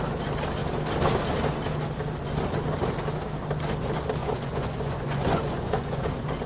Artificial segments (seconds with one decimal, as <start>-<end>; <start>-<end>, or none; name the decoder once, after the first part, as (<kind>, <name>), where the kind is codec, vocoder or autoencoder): 4.2-6.1 (vocoder, Vocos)